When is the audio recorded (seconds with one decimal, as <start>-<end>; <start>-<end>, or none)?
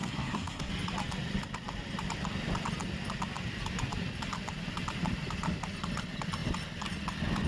0.7-7.5